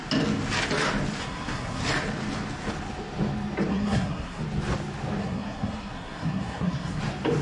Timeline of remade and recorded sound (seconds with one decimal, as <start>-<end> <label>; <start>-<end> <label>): 0.0-1.2 recorded; 1.2-1.8 remade; 1.8-3.7 recorded; 3.7-4.4 remade; 4.4-5.2 recorded; 5.2-7.0 remade; 7.0-7.4 recorded